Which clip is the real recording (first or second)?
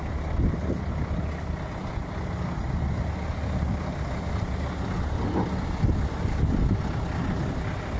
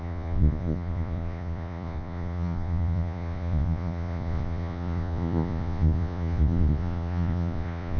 first